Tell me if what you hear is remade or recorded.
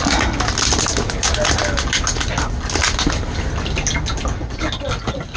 recorded